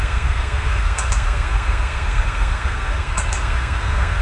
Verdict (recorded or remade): remade